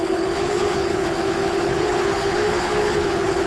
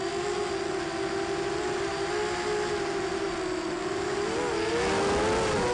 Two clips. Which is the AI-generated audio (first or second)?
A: first